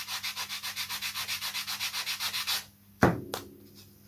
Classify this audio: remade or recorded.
recorded